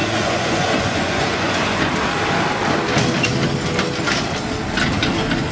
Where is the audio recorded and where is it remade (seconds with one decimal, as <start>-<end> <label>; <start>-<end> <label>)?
0.0-1.9 remade; 1.9-5.5 recorded